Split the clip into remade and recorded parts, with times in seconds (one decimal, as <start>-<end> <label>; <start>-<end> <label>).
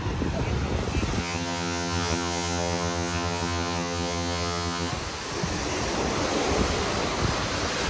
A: 0.0-1.2 recorded; 1.2-4.9 remade; 4.9-7.9 recorded